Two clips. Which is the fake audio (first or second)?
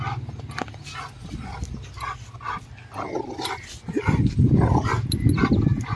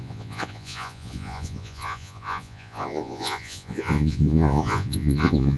second